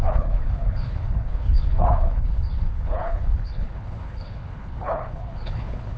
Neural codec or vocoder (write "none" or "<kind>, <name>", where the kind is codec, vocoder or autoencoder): codec, HILCodec